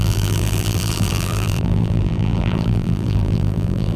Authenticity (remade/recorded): remade